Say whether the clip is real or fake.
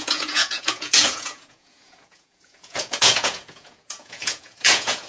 fake